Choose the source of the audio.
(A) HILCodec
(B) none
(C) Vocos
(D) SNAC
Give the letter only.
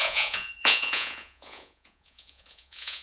C